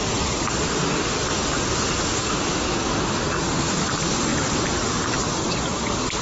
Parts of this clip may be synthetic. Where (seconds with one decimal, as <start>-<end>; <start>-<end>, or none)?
3.7-6.2